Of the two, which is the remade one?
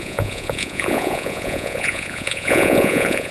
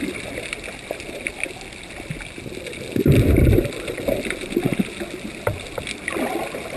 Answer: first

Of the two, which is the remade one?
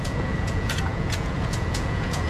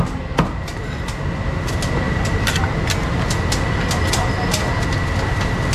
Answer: first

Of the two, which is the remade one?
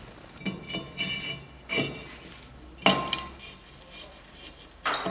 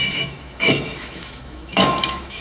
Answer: second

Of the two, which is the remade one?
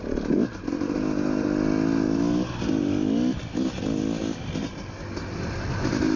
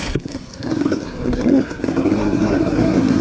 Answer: second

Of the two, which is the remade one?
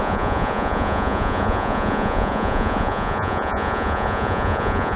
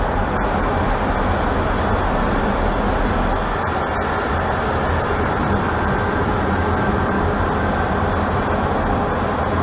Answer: first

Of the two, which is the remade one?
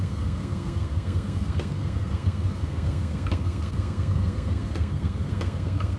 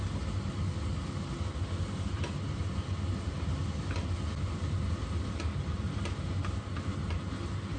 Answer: first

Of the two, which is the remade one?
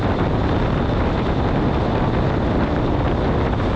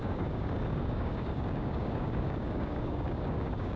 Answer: second